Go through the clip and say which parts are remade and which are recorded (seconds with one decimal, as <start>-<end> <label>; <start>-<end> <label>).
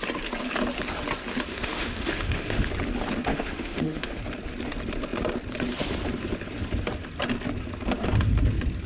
0.0-1.5 recorded; 1.5-2.7 remade; 2.7-3.3 recorded; 3.3-4.2 remade; 4.2-8.9 recorded